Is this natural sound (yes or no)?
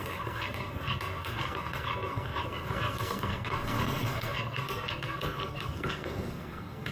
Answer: no